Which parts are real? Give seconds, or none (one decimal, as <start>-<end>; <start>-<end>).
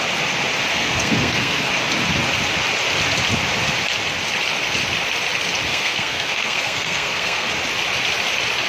0.0-0.7; 1.7-5.7; 7.5-8.7